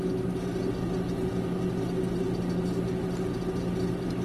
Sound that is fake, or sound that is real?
real